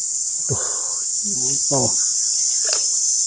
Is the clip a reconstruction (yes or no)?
no